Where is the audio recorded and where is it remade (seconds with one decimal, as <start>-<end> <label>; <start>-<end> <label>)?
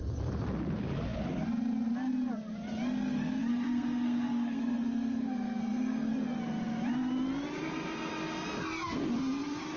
0.0-3.5 recorded; 3.5-6.1 remade; 6.1-9.8 recorded